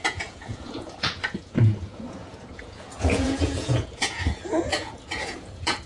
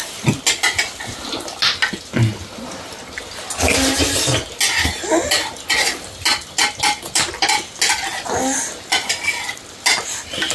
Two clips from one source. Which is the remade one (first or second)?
first